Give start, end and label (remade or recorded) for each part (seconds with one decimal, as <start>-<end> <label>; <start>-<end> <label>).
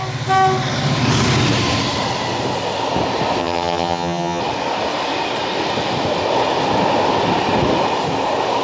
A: 0.0-3.4 recorded; 3.4-4.4 remade; 4.4-8.6 recorded